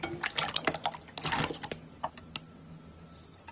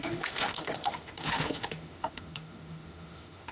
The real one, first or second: first